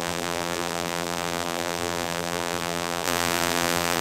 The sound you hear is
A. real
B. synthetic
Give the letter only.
B